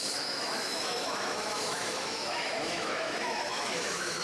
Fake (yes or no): yes